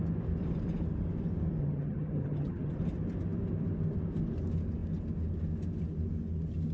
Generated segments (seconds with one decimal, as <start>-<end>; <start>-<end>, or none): 1.6-2.7

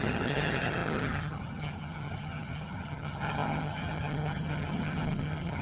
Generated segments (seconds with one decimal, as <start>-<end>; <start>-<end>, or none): 0.0-5.6

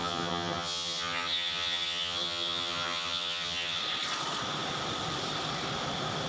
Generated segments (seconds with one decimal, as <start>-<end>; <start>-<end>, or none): 0.0-3.8